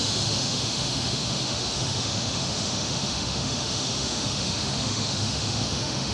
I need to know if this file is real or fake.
fake